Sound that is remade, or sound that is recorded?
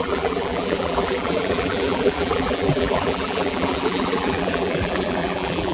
remade